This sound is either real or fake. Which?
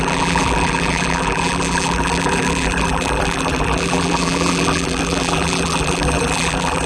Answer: fake